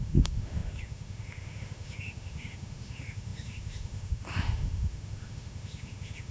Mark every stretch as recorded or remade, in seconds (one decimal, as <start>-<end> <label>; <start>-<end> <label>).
0.0-6.3 remade